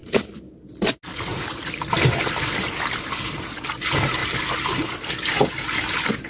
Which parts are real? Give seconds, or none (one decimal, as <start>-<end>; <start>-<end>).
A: 0.5-1.3; 3.0-4.2; 4.9-6.3